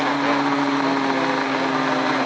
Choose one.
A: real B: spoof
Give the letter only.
A